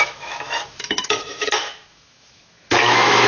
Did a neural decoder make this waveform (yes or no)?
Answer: yes